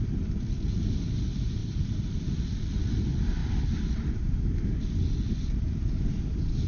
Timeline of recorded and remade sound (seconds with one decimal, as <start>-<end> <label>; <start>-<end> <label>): 0.0-1.6 recorded; 1.6-2.2 remade; 2.2-3.4 recorded; 3.4-4.2 remade; 4.2-6.7 recorded